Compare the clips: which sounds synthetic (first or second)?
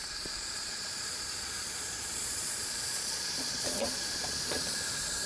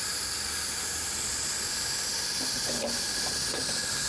first